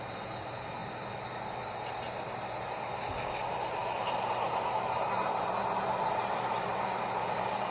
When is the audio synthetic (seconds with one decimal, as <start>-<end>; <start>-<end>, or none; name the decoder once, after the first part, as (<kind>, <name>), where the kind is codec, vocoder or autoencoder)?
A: none